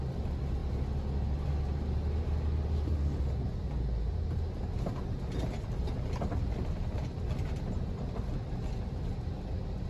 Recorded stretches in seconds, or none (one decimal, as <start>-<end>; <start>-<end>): 0.0-9.9